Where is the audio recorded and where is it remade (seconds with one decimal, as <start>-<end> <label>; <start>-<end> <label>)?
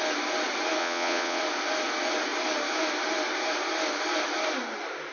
0.0-0.8 recorded; 0.8-1.4 remade; 1.4-5.1 recorded